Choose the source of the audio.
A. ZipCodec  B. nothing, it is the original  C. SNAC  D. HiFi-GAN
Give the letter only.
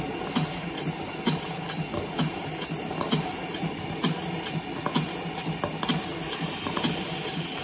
B